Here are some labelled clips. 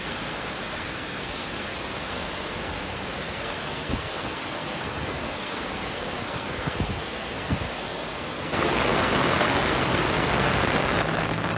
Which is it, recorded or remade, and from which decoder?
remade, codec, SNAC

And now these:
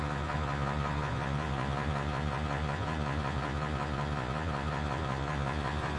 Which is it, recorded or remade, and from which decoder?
remade, vocoder, Vocos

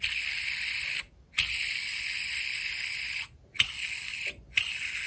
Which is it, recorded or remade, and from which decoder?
recorded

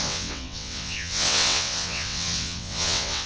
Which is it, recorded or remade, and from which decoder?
remade, vocoder, WaveNeXt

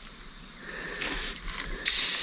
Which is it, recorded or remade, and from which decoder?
recorded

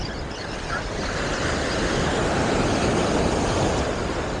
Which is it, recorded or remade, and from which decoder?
recorded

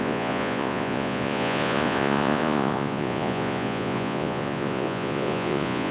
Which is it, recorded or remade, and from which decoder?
remade, vocoder, Vocos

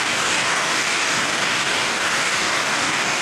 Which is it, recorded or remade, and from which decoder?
remade, codec, DAC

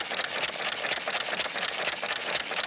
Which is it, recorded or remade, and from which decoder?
recorded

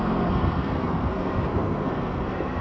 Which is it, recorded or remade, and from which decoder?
remade, codec, SNAC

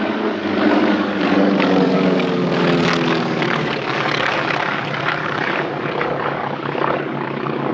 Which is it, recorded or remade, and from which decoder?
remade, codec, DAC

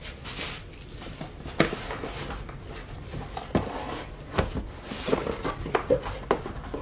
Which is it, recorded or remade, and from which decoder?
recorded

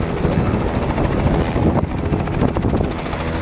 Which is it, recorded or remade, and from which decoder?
recorded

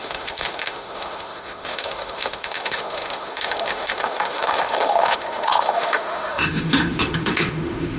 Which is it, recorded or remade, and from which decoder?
remade, autoencoder, DAC-VAE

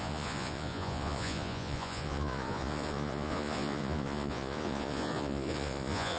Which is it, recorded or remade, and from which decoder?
remade, vocoder, Vocos